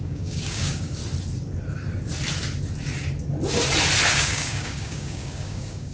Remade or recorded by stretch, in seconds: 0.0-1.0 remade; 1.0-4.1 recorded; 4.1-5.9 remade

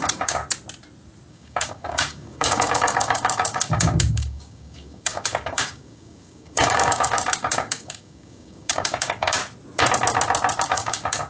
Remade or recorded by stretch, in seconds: 0.0-0.4 remade; 0.4-1.3 recorded; 1.3-9.4 remade; 9.4-10.6 recorded; 10.6-11.3 remade

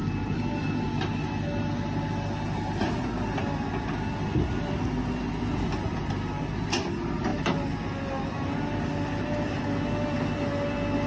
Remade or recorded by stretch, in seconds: 0.0-11.1 recorded

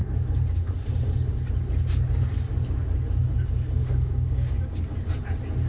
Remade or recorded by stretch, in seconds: 0.0-3.8 recorded; 3.8-4.9 remade; 4.9-5.7 recorded

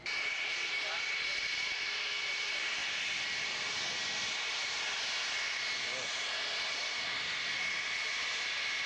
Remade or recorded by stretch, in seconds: 0.0-8.9 recorded

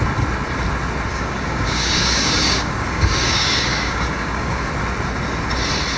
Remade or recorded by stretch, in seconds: 0.0-1.1 recorded; 1.1-4.7 remade; 4.7-6.0 recorded